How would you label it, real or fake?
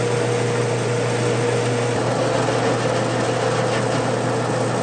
real